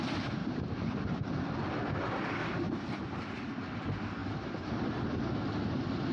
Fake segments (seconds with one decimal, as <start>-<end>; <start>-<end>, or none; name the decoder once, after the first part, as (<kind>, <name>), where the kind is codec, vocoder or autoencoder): 0.4-1.0 (vocoder, BigVGAN v2); 2.4-3.3